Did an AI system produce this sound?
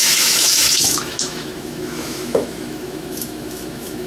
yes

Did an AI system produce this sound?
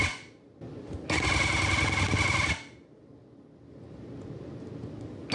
no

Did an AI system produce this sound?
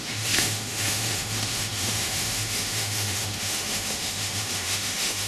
yes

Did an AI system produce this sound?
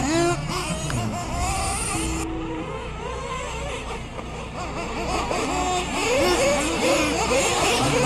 no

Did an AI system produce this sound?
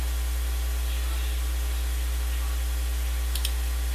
no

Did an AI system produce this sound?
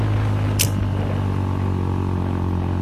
no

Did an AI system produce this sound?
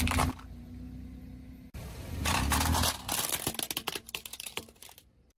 no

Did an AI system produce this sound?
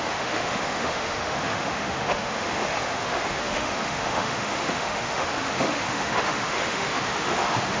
yes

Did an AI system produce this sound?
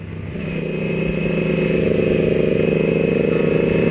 no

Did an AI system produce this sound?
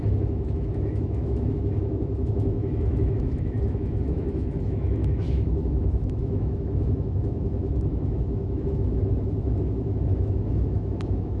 yes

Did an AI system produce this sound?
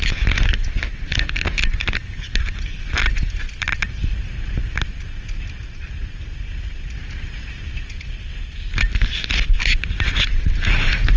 no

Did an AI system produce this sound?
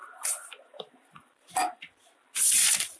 no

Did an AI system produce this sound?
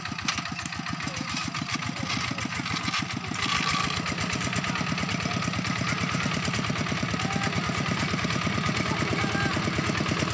no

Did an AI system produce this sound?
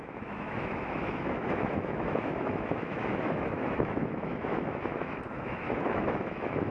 yes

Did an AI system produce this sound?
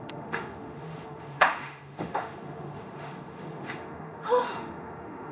yes